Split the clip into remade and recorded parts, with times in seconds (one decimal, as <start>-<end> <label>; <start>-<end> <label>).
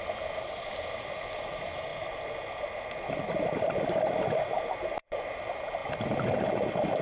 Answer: 0.0-7.0 recorded